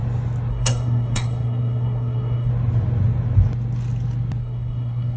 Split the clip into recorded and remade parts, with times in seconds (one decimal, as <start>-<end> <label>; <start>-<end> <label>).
0.0-0.5 recorded; 0.5-2.5 remade; 2.5-4.4 recorded; 4.4-5.2 remade